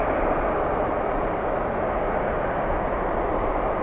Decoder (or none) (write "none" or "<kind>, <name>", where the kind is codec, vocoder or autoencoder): none